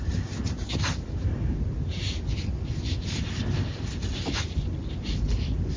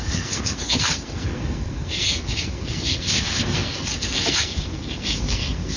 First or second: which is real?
first